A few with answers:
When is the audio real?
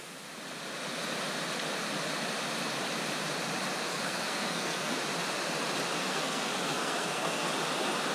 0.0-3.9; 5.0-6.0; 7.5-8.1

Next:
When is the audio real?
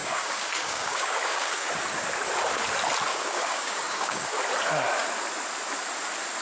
1.7-3.1; 4.4-6.4